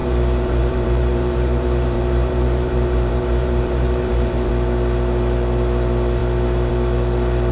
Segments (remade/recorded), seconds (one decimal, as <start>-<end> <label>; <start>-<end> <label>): 0.0-4.5 remade; 4.5-7.5 recorded